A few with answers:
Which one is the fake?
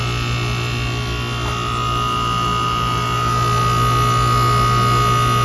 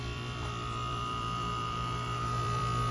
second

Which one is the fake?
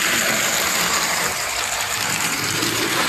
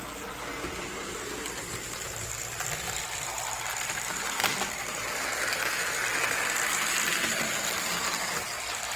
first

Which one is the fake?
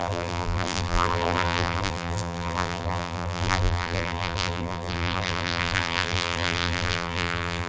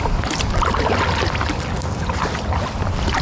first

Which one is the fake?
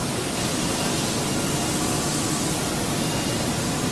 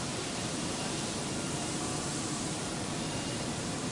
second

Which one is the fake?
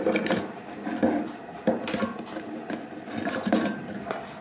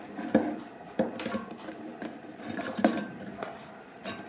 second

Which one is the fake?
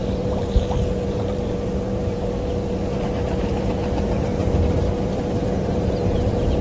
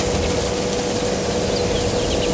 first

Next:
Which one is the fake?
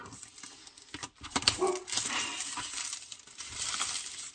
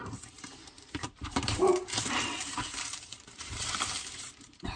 second